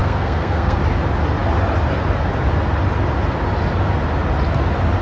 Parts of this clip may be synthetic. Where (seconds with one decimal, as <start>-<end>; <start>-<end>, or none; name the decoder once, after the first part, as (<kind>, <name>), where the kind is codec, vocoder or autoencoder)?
0.0-0.8 (codec, SNAC)